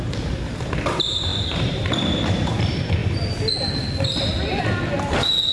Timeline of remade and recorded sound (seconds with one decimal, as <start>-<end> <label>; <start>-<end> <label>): 0.0-3.0 remade; 3.0-4.6 recorded; 4.6-5.5 remade